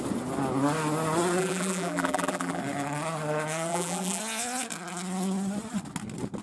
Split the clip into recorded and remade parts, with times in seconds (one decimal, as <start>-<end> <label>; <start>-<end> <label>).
0.0-1.4 recorded; 1.4-2.6 remade; 2.6-3.7 recorded; 3.7-4.2 remade; 4.2-6.4 recorded